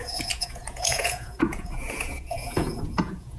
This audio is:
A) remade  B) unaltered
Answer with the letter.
A